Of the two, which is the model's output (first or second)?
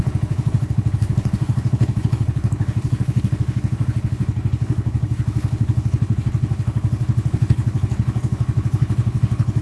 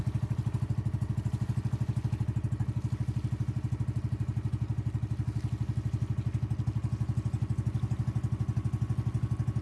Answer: first